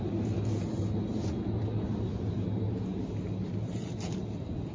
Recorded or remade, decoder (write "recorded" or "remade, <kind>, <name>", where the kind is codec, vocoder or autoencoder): recorded